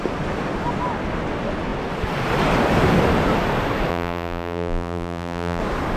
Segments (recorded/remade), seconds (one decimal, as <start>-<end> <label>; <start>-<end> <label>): 0.0-3.9 recorded; 3.9-5.6 remade; 5.6-6.0 recorded